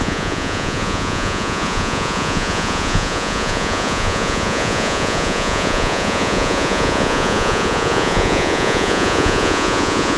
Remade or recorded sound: remade